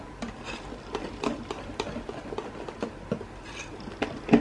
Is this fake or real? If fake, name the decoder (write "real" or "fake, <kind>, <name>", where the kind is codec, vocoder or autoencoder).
real